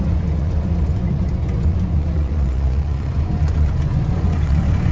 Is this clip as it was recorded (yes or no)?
no